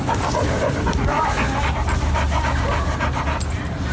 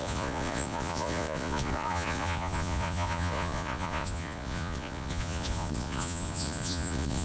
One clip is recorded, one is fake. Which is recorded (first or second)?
first